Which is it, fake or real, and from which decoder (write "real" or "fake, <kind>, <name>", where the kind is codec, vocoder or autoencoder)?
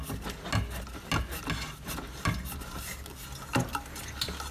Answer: real